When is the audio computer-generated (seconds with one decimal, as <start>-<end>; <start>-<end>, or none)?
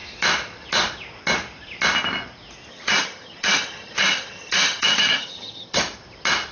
2.7-5.8